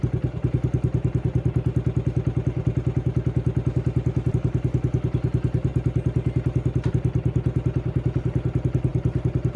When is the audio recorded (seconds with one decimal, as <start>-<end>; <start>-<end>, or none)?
0.0-9.6